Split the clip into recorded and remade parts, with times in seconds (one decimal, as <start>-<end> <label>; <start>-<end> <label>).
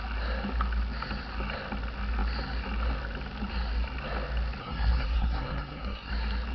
0.0-4.6 recorded; 4.6-6.1 remade; 6.1-6.5 recorded